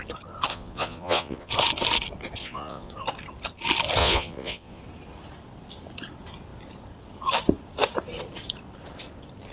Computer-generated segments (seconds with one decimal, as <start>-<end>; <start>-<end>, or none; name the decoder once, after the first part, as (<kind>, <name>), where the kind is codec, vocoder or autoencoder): 0.5-1.5 (vocoder, Vocos); 2.4-2.9; 4.0-4.8